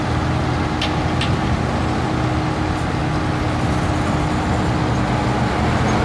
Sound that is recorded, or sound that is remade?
recorded